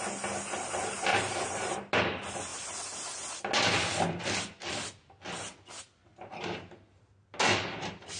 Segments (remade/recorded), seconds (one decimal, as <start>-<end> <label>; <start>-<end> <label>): 0.0-1.1 recorded; 1.1-1.9 remade; 1.9-6.1 recorded; 6.1-7.0 remade; 7.0-8.2 recorded